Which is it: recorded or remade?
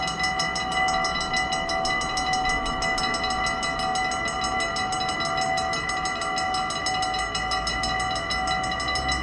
recorded